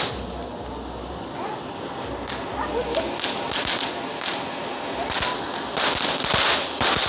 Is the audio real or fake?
real